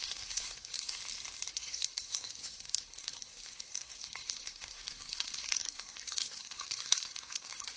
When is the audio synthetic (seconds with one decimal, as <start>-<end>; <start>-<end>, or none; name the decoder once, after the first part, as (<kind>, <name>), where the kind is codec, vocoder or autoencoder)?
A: 0.0-1.0 (codec, SNAC); 1.5-7.8